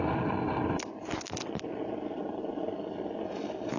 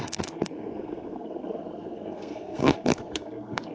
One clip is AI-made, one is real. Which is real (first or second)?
first